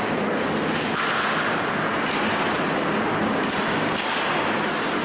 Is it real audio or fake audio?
real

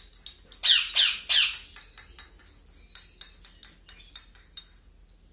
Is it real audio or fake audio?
real